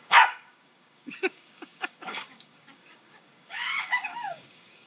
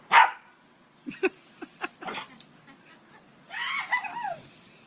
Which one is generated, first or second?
first